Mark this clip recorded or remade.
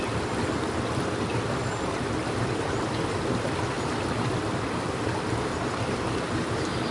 recorded